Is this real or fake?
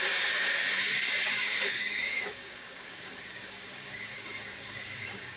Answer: fake